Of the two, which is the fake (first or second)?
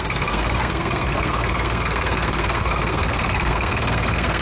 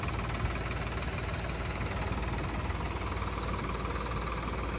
first